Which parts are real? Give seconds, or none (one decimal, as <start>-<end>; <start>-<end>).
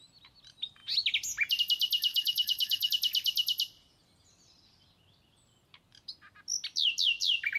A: 0.0-2.1; 2.9-7.6